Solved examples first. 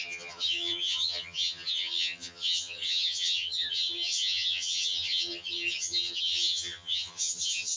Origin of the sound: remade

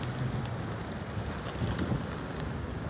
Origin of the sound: recorded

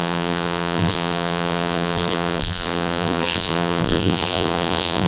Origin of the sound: remade